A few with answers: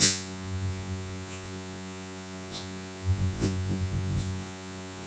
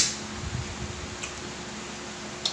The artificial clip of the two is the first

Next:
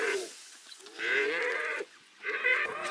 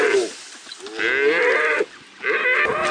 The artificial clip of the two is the first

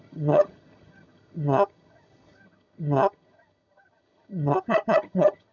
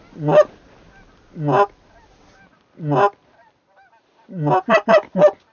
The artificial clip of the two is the first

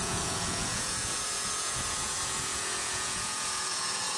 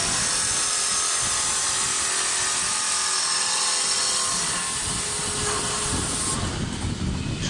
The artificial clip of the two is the first